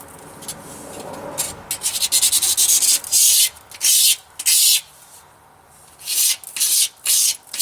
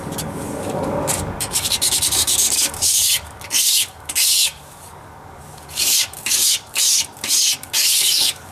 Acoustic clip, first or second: first